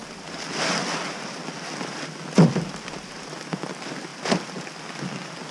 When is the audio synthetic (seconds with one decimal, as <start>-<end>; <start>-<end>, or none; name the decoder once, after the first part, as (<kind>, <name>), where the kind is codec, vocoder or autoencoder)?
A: 0.0-3.2 (vocoder, BigVGAN v2); 4.1-4.6

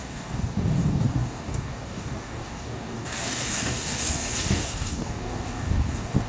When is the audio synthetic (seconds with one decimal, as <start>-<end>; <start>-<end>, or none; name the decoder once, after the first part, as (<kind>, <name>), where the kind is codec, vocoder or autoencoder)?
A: 0.0-6.3 (codec, DAC)

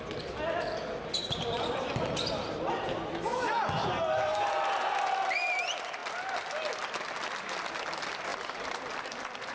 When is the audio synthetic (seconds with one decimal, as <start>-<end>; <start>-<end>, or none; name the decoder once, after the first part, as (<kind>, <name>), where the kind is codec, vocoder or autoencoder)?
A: 8.3-9.5 (vocoder, BigVGAN v2)

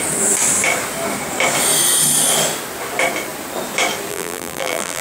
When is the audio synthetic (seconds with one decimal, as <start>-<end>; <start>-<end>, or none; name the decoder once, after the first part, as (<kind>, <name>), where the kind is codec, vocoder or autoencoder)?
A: 4.1-5.0 (vocoder, BigVGAN v2)

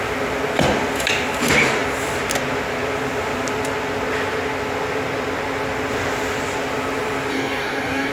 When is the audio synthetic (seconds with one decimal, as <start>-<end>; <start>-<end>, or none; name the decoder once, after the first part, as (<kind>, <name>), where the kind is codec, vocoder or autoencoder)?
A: 7.3-8.1 (codec, DAC)

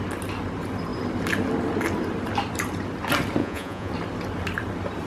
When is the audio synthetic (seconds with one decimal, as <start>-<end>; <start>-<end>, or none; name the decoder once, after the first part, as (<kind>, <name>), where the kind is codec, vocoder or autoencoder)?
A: 3.4-3.9 (vocoder, Vocos)

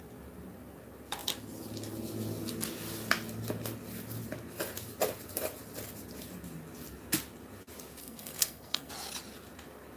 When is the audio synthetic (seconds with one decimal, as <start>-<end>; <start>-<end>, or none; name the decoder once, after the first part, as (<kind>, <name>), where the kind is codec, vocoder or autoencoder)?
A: 8.0-8.9 (codec, SNAC)

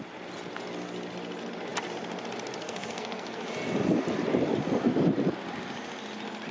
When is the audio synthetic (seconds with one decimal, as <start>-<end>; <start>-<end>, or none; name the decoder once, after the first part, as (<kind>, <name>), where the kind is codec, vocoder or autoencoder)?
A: 2.6-3.5 (codec, SNAC)